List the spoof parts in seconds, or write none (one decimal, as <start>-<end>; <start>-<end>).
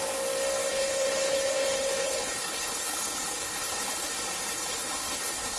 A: 0.7-4.1; 4.5-5.6